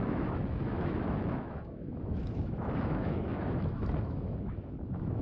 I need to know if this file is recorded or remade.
remade